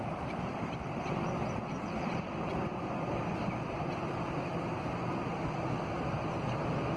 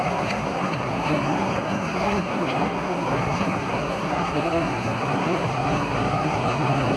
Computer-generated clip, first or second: second